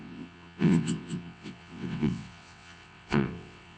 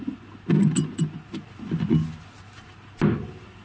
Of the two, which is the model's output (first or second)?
first